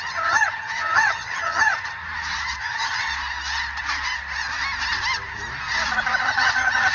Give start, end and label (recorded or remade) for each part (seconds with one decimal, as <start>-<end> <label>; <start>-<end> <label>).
0.0-2.0 remade; 2.0-2.6 recorded; 2.6-3.1 remade; 3.1-6.2 recorded; 6.2-6.9 remade